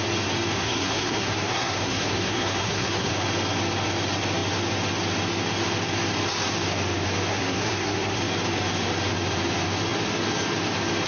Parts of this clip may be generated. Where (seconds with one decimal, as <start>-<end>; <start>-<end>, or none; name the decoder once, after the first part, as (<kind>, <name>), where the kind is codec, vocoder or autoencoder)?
0.6-3.1 (codec, SNAC); 7.3-8.2